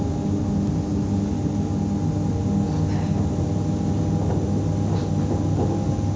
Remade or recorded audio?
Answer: recorded